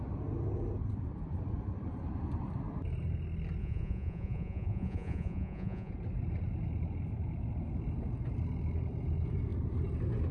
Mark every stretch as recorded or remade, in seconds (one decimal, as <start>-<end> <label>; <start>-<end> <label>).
0.0-3.6 recorded; 3.6-5.9 remade; 5.9-10.3 recorded